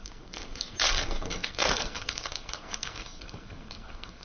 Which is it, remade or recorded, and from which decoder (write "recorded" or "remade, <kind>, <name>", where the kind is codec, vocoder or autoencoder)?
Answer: remade, codec, SNAC